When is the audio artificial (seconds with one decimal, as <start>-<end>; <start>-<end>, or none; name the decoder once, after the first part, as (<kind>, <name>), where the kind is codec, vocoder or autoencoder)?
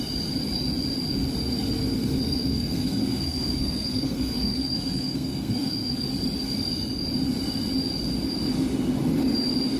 1.9-6.1 (codec, SNAC)